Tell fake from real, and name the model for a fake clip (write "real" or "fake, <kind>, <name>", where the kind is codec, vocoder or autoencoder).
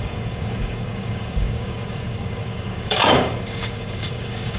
fake, codec, DAC